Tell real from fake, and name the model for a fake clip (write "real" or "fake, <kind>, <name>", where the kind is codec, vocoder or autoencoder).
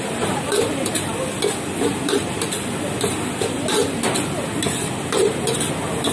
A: real